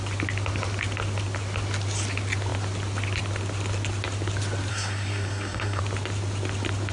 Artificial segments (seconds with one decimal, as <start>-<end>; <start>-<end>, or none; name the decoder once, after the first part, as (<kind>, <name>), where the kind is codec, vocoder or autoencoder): 4.7-5.8 (codec, SNAC)

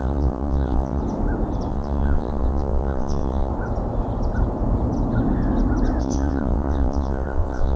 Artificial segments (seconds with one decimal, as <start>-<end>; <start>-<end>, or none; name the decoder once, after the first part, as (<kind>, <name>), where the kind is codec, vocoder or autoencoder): 0.0-1.0 (vocoder, WaveNeXt); 1.7-3.5; 6.0-7.8

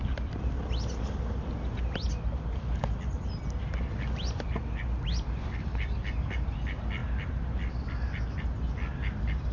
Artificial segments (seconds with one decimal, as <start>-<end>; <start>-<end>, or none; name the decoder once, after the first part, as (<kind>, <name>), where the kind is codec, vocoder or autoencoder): none

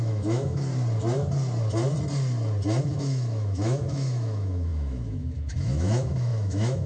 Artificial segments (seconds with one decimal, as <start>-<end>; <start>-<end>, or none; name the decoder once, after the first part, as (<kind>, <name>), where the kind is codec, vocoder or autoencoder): 0.0-0.7 (autoencoder, DAC-VAE); 2.8-6.9

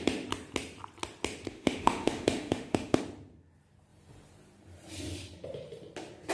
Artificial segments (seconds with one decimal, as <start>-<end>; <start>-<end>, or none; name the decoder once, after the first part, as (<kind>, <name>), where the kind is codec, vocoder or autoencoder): 1.5-3.0 (autoencoder, DAC-VAE)

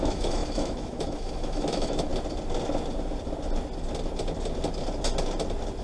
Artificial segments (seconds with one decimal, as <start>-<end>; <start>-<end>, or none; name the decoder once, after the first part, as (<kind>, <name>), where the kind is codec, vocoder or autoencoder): 0.0-2.1 (autoencoder, DAC-VAE)